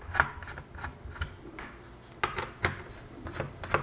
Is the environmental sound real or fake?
real